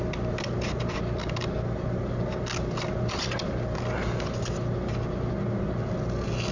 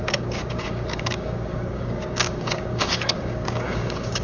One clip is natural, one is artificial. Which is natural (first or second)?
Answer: first